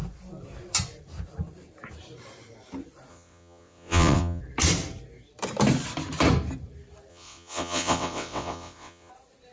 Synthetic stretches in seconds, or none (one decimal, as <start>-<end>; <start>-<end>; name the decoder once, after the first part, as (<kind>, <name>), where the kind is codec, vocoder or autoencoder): 3.1-4.4 (vocoder, WaveNeXt); 7.1-9.1